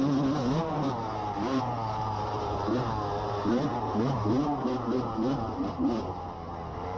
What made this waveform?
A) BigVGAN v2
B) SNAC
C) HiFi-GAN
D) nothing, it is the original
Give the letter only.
A